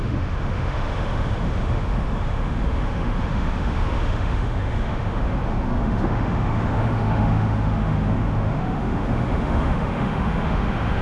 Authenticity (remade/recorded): remade